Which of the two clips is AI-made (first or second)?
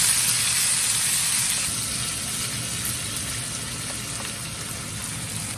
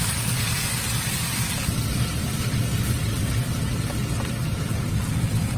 second